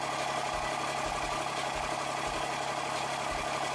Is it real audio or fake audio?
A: real